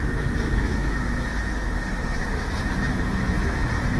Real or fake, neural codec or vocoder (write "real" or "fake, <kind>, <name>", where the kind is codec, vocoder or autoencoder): fake, autoencoder, DAC-VAE